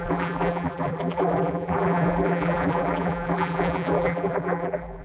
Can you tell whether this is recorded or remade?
remade